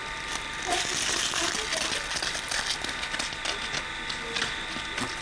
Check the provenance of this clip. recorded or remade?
recorded